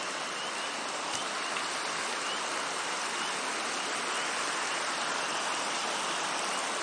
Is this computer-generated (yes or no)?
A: no